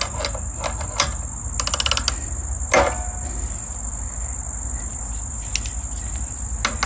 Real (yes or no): yes